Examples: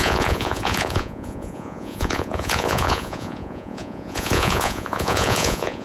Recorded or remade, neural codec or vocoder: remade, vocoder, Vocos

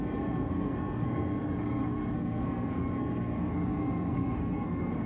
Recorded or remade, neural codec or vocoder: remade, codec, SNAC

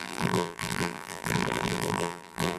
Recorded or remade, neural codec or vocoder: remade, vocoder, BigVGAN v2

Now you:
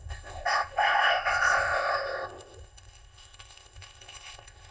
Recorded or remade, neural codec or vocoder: remade, codec, ZipCodec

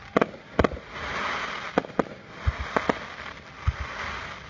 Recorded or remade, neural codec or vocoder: recorded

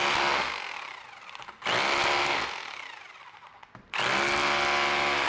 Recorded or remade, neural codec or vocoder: recorded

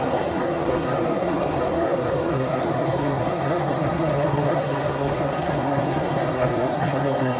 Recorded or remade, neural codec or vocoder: remade, codec, SNAC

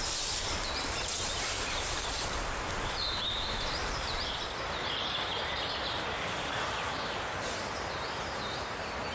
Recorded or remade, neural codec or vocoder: remade, vocoder, BigVGAN v2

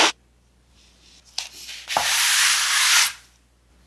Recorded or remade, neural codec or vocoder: recorded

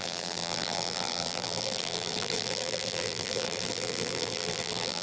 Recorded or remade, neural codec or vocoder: remade, vocoder, BigVGAN v2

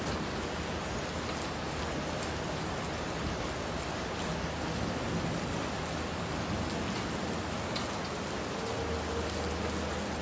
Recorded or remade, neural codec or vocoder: recorded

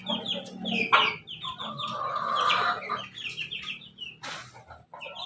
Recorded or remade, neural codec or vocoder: recorded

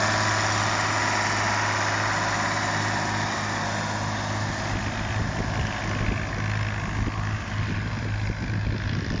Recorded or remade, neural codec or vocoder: recorded